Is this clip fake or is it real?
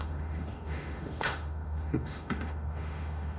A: fake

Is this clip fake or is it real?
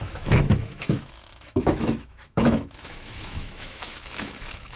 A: fake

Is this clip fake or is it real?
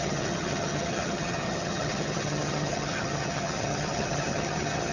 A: fake